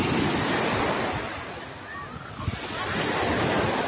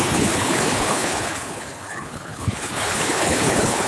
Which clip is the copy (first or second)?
second